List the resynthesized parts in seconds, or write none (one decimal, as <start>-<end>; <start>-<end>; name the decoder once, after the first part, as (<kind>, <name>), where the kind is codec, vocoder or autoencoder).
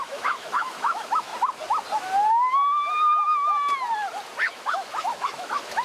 0.0-1.3 (autoencoder, DAC-VAE); 4.5-5.8